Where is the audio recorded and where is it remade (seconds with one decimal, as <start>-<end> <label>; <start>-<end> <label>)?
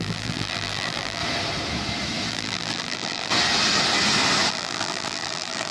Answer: 0.0-1.2 remade; 1.2-2.3 recorded; 2.3-3.3 remade; 3.3-4.5 recorded; 4.5-5.7 remade